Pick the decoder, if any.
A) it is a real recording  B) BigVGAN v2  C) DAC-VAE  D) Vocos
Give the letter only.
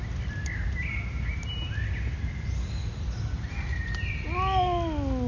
A